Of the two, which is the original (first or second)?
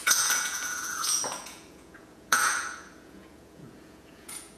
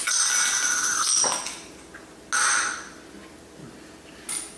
second